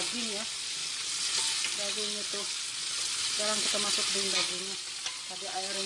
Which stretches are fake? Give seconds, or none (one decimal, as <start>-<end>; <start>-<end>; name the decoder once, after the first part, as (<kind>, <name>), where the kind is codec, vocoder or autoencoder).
none

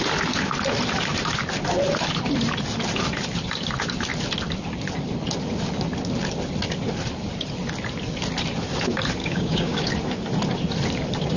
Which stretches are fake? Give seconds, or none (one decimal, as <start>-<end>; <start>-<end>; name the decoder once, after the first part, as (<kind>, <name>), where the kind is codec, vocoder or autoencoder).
9.2-9.9 (codec, DAC)

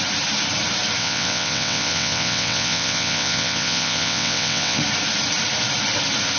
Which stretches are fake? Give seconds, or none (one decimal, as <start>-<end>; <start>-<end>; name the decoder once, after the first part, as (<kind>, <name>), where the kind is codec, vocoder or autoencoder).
1.0-4.8 (vocoder, WaveNeXt)

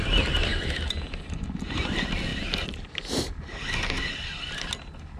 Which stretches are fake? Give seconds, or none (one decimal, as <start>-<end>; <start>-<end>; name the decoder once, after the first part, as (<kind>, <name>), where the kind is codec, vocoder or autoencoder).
none

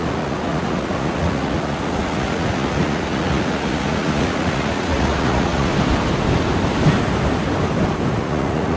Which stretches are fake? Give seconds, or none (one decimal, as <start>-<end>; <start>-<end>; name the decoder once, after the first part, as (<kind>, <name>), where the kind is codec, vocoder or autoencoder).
0.0-5.7 (vocoder, Vocos); 8.1-8.8

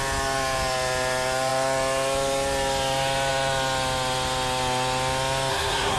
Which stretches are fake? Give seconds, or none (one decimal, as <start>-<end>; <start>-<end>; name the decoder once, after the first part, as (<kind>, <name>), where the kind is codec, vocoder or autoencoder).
5.5-6.0 (codec, SNAC)

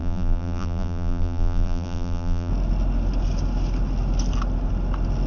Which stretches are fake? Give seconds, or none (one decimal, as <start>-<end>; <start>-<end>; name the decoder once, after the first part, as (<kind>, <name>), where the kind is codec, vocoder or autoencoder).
0.0-2.5 (vocoder, BigVGAN v2)

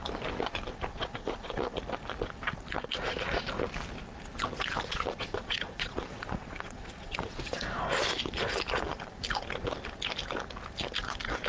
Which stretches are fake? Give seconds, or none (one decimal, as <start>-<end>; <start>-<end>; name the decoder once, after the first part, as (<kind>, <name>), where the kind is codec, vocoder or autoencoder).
0.9-1.7 (vocoder, Vocos); 4.9-7.8